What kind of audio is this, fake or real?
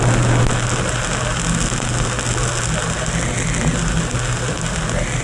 real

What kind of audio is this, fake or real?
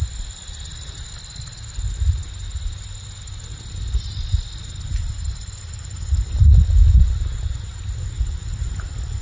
real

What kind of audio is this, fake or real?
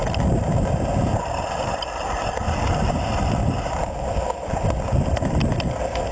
real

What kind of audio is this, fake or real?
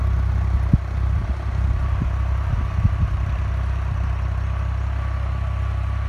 real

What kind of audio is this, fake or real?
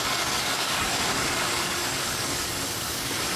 fake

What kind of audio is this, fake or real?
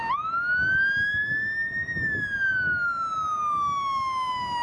real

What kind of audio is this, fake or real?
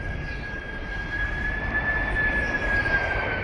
real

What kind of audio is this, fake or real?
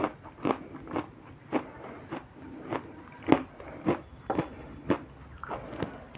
real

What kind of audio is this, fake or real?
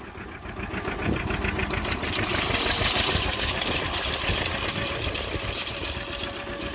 real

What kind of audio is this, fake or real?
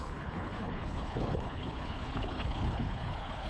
fake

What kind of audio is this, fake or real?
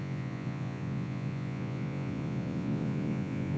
fake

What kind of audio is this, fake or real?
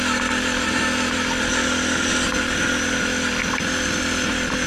real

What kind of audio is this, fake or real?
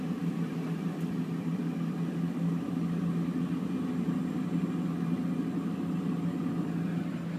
real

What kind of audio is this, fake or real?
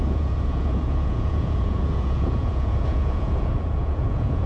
fake